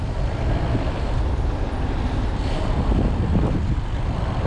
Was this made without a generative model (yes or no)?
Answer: no